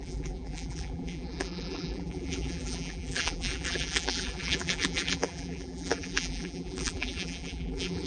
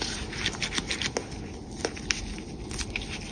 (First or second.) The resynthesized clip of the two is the first